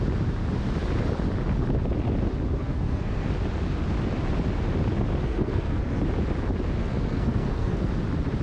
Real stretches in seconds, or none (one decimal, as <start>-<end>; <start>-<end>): 0.0-2.6; 3.3-5.2; 6.0-6.8; 7.9-8.4